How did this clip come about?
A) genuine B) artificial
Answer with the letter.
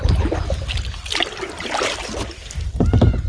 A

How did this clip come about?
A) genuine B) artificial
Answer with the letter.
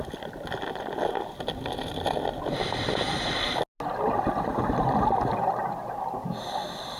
A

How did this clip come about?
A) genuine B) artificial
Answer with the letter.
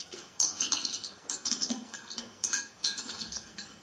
B